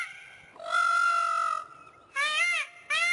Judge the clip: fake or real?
real